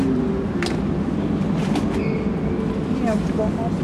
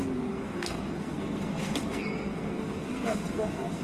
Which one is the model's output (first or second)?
second